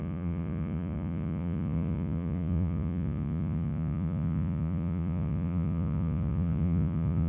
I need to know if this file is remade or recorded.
remade